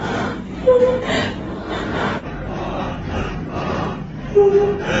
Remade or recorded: recorded